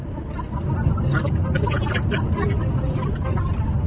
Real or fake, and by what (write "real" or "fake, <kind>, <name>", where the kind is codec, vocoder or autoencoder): real